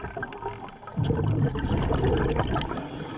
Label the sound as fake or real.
real